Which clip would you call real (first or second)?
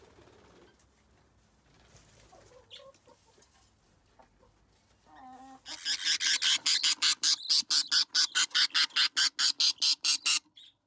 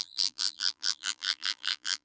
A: first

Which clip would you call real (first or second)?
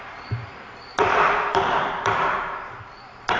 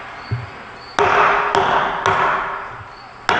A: second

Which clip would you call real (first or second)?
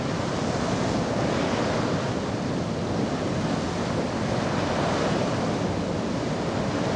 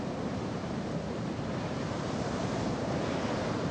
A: first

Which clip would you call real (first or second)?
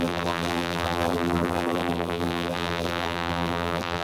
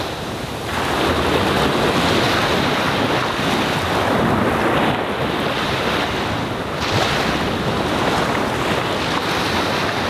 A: second